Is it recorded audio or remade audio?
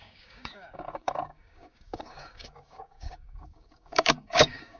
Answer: remade